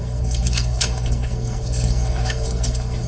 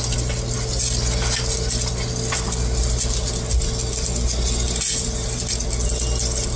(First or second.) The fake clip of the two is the first